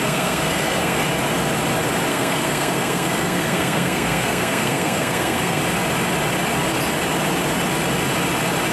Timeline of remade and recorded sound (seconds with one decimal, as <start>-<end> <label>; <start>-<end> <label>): 0.0-1.0 remade; 1.0-2.1 recorded; 2.1-5.6 remade; 5.6-8.7 recorded